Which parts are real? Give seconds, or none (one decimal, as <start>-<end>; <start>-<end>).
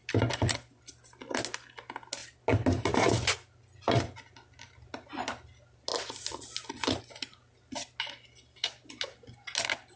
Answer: 0.0-10.0